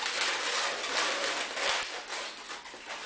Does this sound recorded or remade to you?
recorded